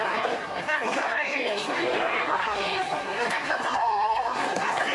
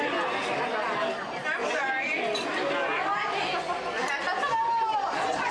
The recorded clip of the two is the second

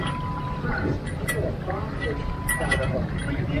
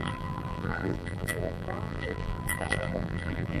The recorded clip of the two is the first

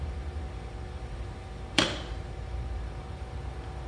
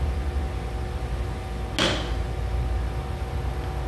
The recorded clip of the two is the second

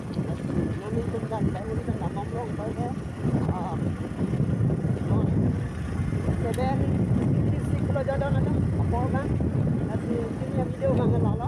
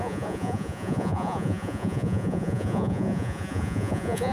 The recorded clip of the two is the first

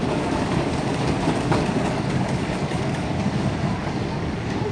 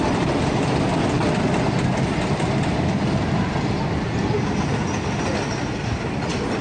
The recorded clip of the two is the second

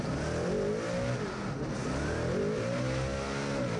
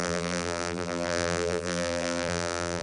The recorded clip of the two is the first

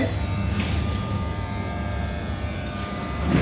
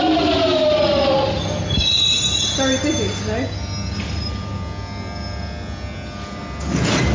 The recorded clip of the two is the second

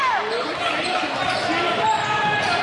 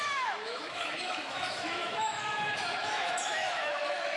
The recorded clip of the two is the first